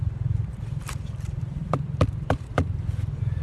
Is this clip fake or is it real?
fake